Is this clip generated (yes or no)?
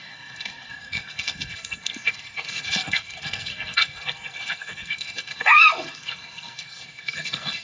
yes